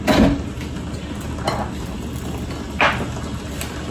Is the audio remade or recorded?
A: recorded